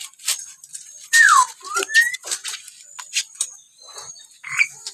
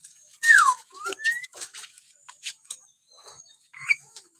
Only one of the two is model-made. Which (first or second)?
second